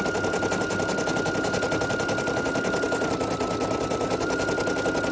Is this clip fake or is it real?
real